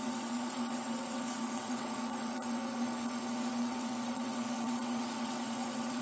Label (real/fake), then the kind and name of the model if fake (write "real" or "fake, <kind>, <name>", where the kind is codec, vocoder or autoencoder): fake, vocoder, WaveNeXt